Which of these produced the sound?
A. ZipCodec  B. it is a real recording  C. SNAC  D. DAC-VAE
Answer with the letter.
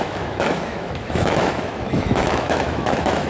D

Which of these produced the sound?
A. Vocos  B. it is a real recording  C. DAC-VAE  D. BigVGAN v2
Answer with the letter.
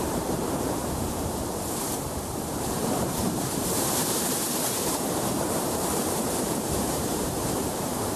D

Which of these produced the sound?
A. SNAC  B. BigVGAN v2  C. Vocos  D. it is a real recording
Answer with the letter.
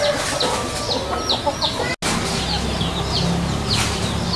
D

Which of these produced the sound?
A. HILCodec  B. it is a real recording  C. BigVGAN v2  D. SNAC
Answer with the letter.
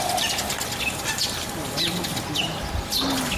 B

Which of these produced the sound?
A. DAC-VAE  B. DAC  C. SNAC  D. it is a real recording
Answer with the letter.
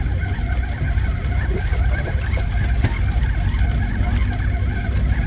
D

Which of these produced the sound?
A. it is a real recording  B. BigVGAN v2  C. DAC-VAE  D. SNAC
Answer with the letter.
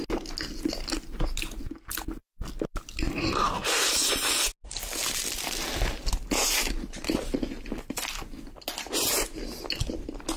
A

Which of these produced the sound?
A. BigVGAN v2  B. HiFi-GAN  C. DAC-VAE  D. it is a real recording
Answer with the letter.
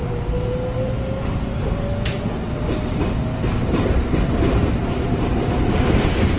A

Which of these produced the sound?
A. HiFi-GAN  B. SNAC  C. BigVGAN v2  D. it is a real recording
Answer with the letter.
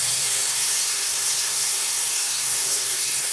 B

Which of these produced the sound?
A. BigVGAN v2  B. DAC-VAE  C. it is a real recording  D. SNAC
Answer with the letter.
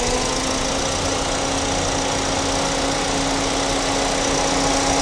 C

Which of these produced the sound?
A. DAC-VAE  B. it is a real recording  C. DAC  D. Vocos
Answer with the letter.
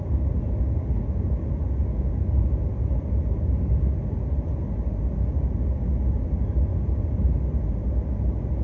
B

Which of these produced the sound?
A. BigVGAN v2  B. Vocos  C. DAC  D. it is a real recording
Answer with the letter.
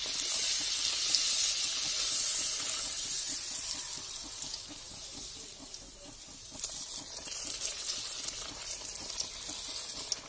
D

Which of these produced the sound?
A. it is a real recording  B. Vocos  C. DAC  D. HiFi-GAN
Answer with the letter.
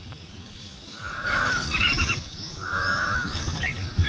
C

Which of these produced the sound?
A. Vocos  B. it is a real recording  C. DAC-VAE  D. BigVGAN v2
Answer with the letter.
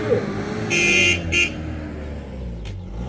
B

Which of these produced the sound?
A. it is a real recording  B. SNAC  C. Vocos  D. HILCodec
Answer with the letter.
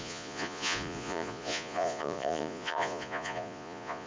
C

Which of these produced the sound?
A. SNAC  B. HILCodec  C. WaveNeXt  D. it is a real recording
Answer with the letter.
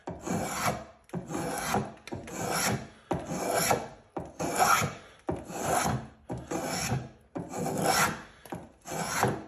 D